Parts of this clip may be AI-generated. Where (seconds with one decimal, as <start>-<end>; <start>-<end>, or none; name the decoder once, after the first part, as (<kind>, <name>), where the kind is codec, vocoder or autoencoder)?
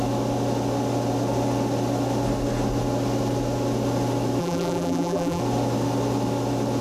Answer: 4.4-5.4 (vocoder, BigVGAN v2)